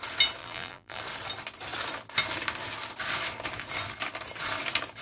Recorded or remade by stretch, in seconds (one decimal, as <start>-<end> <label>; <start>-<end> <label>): 0.0-0.4 recorded; 0.4-1.0 remade; 1.0-5.0 recorded